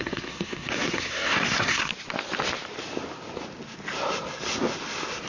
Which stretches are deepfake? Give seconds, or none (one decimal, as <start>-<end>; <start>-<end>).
0.0-1.9